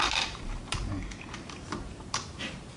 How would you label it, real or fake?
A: fake